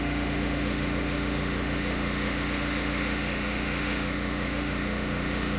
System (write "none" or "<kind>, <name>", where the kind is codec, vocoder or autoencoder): autoencoder, DAC-VAE